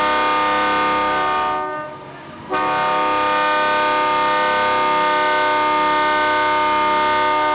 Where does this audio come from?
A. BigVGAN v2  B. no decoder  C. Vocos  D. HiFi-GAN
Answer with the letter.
B